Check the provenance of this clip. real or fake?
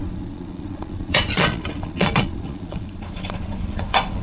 fake